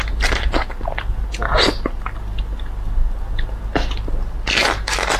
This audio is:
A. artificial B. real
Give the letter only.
B